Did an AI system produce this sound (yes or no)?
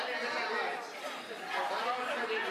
no